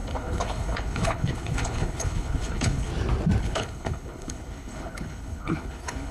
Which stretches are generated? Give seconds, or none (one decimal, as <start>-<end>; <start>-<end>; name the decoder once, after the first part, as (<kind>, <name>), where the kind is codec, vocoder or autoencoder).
0.0-2.9 (codec, HILCodec); 3.4-6.1